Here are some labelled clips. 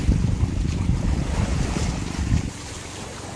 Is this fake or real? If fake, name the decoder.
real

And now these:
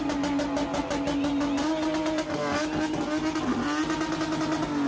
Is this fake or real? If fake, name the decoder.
real